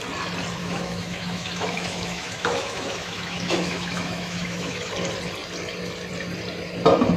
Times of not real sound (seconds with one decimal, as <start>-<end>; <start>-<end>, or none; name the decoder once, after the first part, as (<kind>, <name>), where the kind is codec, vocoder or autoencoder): 0.6-4.9 (autoencoder, DAC-VAE)